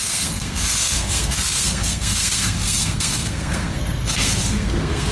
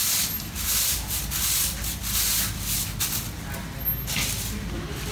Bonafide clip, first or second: second